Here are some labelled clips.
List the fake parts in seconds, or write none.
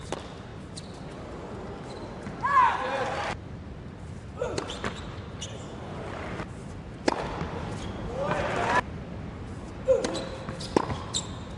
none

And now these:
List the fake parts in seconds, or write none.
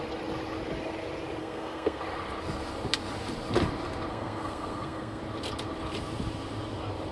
1.4-2.0 (codec, SNAC); 4.1-5.2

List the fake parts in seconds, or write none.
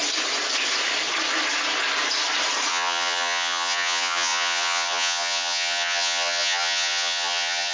2.7-7.7 (vocoder, HiFi-GAN)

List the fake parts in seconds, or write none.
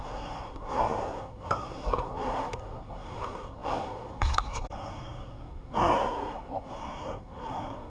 0.0-7.9 (codec, SNAC)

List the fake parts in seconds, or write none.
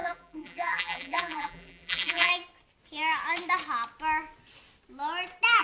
0.0-2.3 (vocoder, BigVGAN v2)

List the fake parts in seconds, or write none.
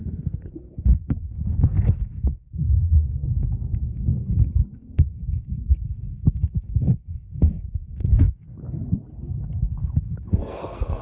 0.0-8.8 (codec, SNAC); 9.4-11.0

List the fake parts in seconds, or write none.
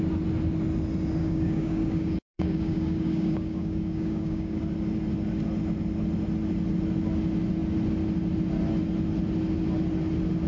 1.2-4.6 (codec, DAC)